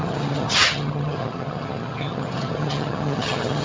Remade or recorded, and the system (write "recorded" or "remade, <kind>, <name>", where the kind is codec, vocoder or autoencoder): remade, vocoder, HiFi-GAN